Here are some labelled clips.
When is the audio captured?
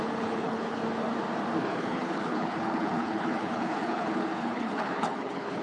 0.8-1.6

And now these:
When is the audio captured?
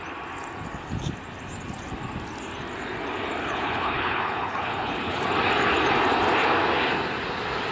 0.0-3.4; 5.2-7.7